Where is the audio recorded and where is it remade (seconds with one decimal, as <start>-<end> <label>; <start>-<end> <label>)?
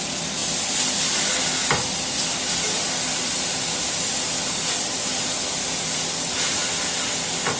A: 0.0-7.6 recorded